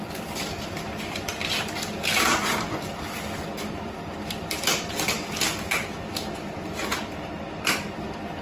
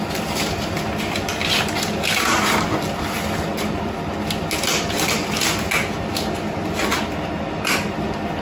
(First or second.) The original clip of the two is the second